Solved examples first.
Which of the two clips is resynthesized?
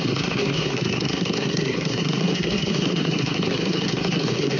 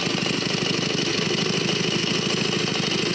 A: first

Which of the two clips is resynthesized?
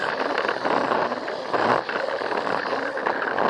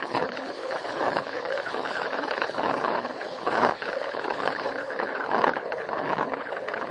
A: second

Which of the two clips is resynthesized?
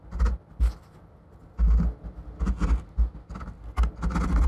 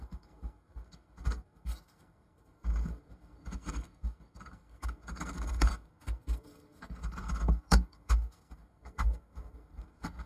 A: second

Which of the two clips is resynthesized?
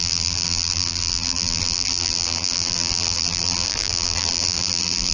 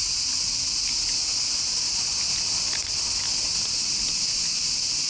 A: first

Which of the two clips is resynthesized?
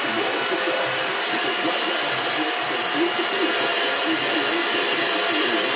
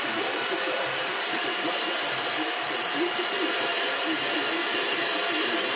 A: second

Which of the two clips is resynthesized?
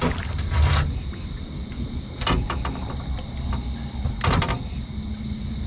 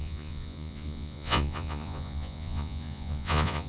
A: second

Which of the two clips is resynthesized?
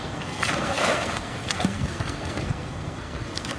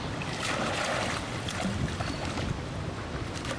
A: first